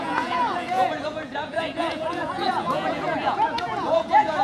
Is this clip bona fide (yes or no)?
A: no